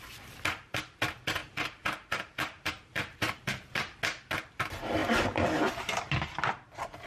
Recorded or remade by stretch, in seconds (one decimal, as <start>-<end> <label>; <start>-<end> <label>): 0.0-1.4 recorded; 1.4-3.4 remade; 3.4-5.0 recorded; 5.0-5.7 remade; 5.7-7.1 recorded